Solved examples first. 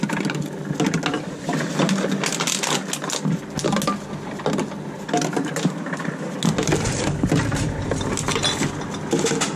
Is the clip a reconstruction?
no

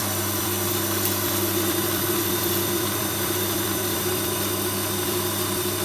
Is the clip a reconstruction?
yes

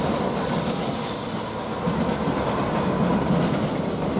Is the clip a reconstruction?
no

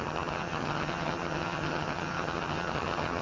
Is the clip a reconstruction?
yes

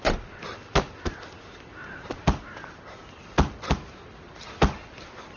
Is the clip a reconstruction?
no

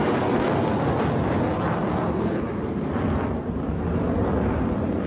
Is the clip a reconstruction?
no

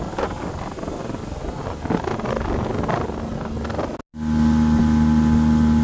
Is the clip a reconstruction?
no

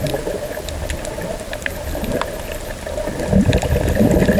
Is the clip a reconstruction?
no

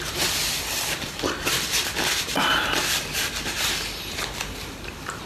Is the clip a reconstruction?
yes